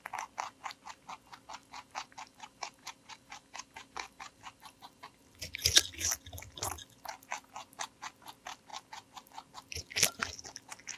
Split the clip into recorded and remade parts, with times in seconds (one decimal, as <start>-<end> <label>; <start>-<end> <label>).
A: 0.0-1.6 recorded; 1.6-5.2 remade; 5.2-11.0 recorded